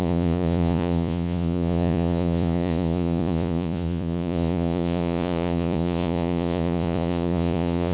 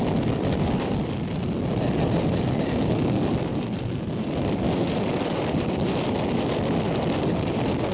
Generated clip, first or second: first